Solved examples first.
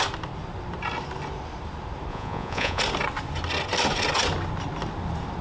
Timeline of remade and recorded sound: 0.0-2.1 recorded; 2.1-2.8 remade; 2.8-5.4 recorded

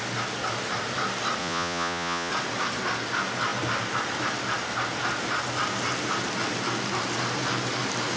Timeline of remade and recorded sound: 0.0-1.4 recorded; 1.4-2.3 remade; 2.3-8.2 recorded

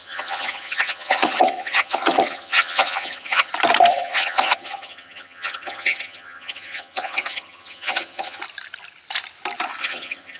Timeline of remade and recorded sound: 0.0-3.5 remade; 3.5-3.9 recorded; 3.9-8.4 remade; 8.4-9.8 recorded; 9.8-10.4 remade

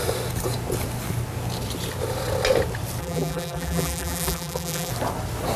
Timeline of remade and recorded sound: 0.0-3.0 recorded; 3.0-4.9 remade; 4.9-5.6 recorded

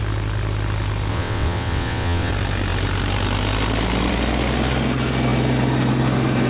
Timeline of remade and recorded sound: 0.0-1.1 recorded; 1.1-2.3 remade; 2.3-6.5 recorded

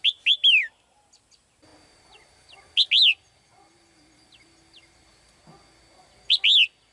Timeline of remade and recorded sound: 0.0-6.9 recorded

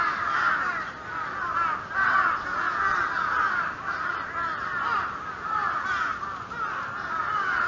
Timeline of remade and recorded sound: 0.0-0.4 remade; 0.4-3.5 recorded; 3.5-5.6 remade; 5.6-7.7 recorded

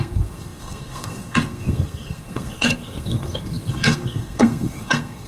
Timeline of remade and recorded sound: 0.0-5.3 remade